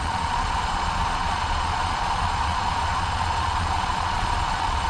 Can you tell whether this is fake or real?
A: fake